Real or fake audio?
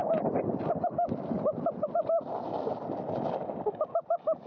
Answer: real